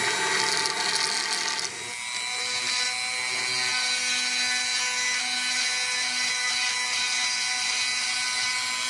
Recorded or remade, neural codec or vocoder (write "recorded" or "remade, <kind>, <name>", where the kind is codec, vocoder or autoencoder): recorded